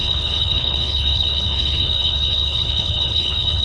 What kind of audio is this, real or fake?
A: fake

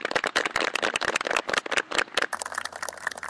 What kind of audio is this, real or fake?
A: real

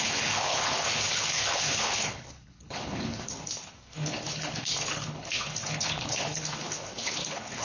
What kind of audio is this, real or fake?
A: fake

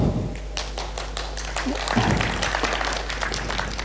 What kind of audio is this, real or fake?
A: real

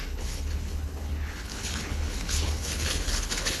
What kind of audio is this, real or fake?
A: fake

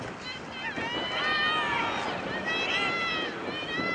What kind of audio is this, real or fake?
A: real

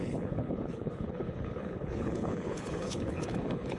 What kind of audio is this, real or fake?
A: fake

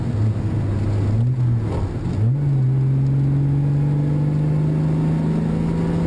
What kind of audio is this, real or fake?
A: real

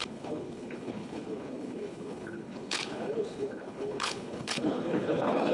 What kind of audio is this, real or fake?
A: fake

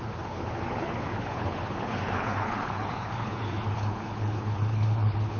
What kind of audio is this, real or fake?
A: fake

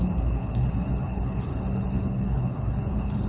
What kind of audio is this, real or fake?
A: fake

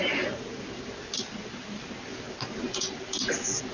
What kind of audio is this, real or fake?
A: real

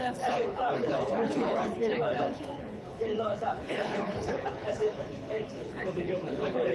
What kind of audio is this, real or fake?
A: fake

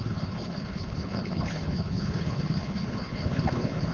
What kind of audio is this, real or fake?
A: fake